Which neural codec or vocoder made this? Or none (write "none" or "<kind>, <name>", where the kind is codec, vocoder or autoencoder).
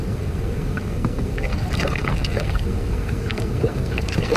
codec, SNAC